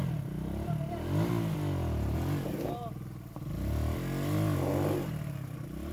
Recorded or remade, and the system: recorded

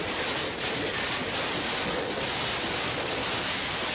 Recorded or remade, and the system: recorded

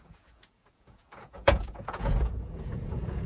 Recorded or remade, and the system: remade, vocoder, Vocos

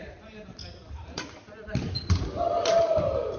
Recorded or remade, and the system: recorded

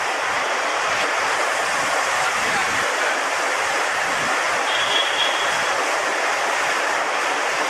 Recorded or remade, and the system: remade, vocoder, BigVGAN v2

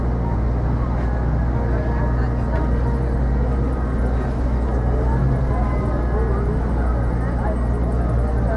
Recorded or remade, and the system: recorded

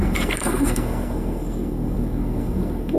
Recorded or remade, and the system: remade, codec, SNAC